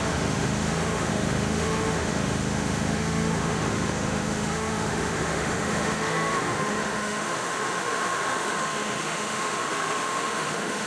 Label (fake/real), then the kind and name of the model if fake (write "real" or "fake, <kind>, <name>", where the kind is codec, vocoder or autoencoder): fake, autoencoder, DAC-VAE